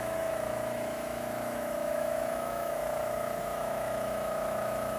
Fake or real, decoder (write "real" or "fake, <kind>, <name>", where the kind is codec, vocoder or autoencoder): fake, autoencoder, DAC-VAE